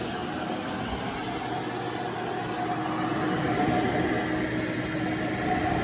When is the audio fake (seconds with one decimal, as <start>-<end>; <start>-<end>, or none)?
none